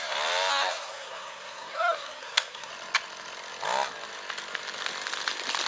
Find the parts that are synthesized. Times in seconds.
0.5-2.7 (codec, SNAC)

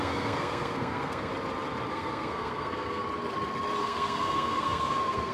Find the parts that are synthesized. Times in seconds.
0.0-1.3 (codec, SNAC); 1.9-3.0; 3.8-5.3

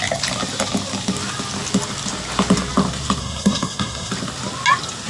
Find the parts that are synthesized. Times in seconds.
3.2-4.1 (codec, SNAC)

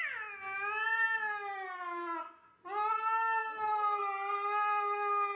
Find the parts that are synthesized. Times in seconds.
none

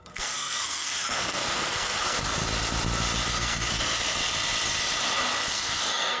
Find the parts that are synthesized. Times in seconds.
0.0-2.4 (codec, SNAC); 3.3-4.2; 5.5-6.2

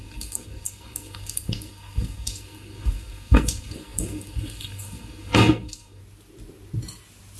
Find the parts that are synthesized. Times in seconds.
0.0-6.0 (codec, SNAC)

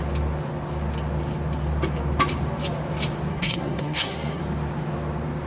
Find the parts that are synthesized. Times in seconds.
3.3-4.4 (codec, SNAC)

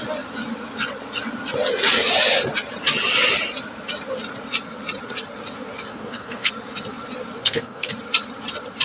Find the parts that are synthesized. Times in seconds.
5.9-6.5 (codec, SNAC); 7.4-7.9